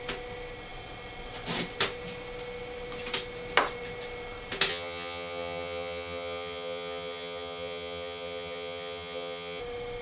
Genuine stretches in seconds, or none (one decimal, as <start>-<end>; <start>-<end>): 0.0-4.7; 9.6-10.0